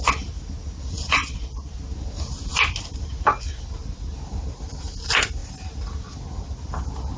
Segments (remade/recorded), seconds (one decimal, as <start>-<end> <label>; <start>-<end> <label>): 0.0-1.2 recorded; 1.2-1.8 remade; 1.8-7.2 recorded